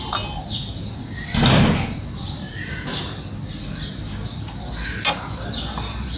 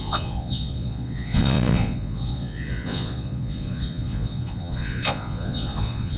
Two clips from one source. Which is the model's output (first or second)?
second